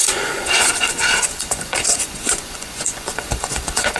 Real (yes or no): no